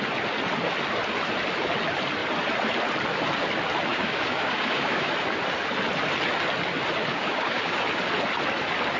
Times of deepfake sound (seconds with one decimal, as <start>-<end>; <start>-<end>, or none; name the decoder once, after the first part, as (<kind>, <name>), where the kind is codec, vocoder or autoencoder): 3.9-5.1 (codec, DAC); 7.1-7.8